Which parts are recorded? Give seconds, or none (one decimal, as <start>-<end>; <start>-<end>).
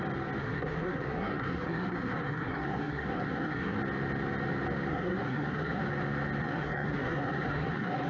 0.0-0.4; 3.8-4.9; 5.8-6.4